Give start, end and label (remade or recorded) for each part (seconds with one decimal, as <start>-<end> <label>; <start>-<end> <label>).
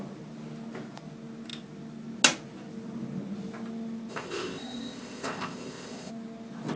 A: 0.0-4.1 recorded; 4.1-6.1 remade; 6.1-6.8 recorded